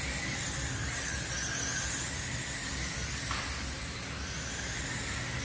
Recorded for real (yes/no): yes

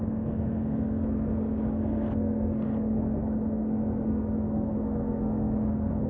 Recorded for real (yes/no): no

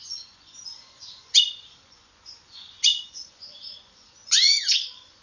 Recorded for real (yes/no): no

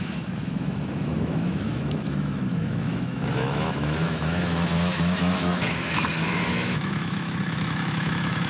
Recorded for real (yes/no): no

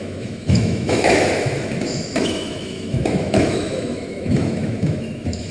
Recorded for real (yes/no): no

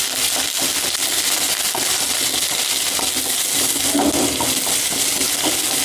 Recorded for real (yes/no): yes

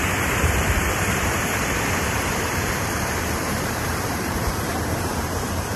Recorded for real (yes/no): no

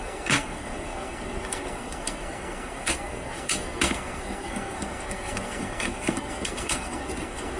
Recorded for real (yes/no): no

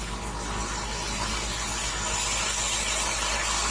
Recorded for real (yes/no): yes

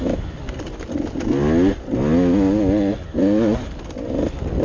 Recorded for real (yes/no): yes